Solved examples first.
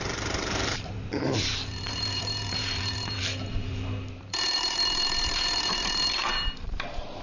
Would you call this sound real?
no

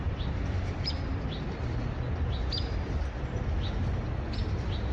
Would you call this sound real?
yes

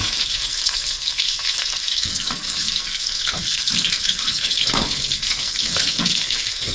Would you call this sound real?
no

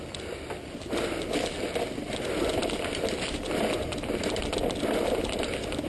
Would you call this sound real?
yes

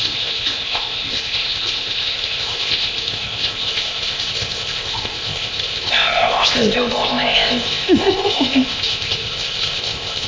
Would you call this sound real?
no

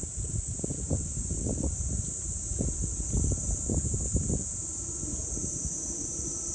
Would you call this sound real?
yes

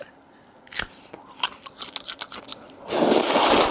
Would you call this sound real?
yes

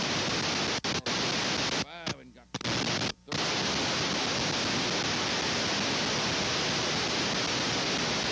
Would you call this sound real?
yes